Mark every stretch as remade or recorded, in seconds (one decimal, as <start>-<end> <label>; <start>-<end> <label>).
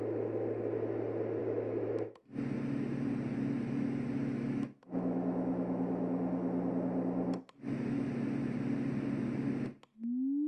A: 0.0-1.4 recorded; 1.4-2.2 remade; 2.2-4.2 recorded; 4.2-6.7 remade; 6.7-10.5 recorded